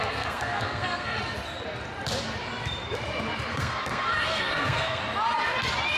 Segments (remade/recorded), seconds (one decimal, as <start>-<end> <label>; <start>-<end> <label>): 0.0-1.2 remade; 1.2-3.5 recorded; 3.5-5.0 remade; 5.0-6.0 recorded

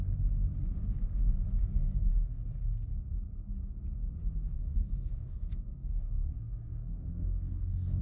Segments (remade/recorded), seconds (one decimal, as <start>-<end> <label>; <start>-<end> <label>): 0.0-1.6 recorded; 1.6-2.1 remade; 2.1-4.5 recorded; 4.5-8.0 remade

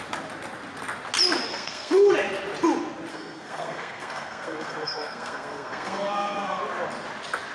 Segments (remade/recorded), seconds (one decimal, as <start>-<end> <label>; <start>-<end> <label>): 0.0-1.5 recorded; 1.5-2.1 remade; 2.1-3.1 recorded; 3.1-6.6 remade; 6.6-7.5 recorded

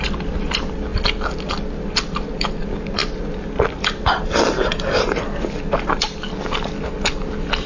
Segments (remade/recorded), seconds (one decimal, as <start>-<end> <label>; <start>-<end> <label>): 0.0-7.7 recorded

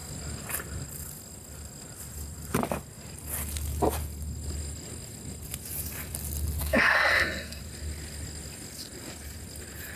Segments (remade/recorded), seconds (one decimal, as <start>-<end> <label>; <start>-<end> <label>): 0.0-6.6 recorded; 6.6-7.6 remade; 7.6-10.0 recorded

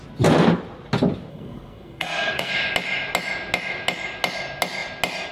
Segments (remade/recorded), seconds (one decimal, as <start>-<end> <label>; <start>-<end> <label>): 0.0-1.3 recorded; 1.3-2.5 remade; 2.5-5.3 recorded

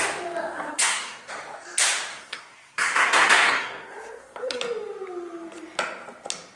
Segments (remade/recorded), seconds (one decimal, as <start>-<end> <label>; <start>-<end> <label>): 0.0-0.7 recorded; 0.7-1.3 remade; 1.3-2.1 recorded; 2.1-4.6 remade; 4.6-6.6 recorded